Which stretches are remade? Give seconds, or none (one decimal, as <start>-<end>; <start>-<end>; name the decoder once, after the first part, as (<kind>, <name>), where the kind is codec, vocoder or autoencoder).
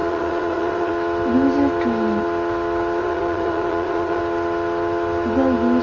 0.0-0.9 (vocoder, Vocos); 3.0-4.2